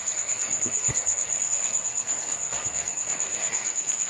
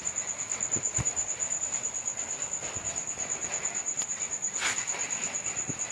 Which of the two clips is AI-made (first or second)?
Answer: first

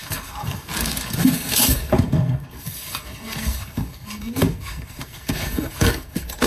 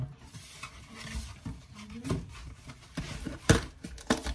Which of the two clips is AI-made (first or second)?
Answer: first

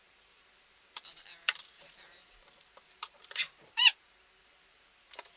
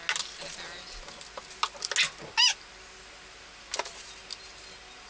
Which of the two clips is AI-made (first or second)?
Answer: first